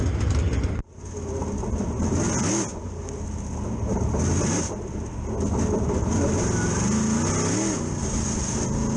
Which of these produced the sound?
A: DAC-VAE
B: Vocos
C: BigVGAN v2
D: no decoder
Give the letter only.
D